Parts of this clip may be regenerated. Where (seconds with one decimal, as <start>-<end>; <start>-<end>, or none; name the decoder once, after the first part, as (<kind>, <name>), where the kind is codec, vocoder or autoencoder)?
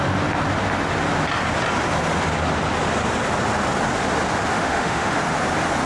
4.5-5.2 (autoencoder, DAC-VAE)